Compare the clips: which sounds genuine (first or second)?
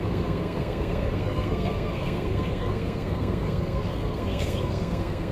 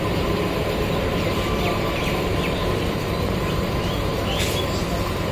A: second